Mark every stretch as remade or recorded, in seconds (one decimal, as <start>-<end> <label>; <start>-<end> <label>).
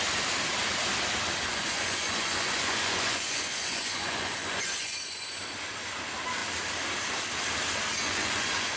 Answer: 0.0-1.5 recorded; 1.5-5.4 remade; 5.4-8.0 recorded; 8.0-8.8 remade